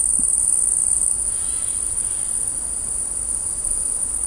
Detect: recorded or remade recorded